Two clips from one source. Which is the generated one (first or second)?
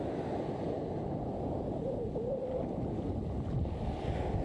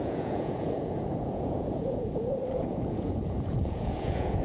second